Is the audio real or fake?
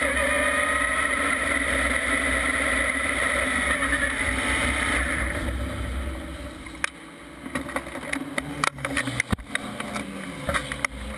real